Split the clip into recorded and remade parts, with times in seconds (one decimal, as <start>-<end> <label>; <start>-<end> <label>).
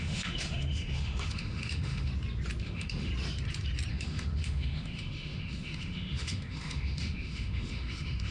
0.0-2.1 remade; 2.1-2.6 recorded; 2.6-3.1 remade; 3.1-3.9 recorded; 3.9-8.3 remade